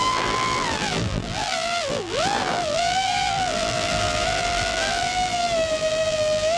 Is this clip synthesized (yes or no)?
yes